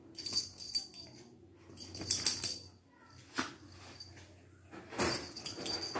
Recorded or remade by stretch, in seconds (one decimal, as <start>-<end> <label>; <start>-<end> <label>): 0.0-6.0 recorded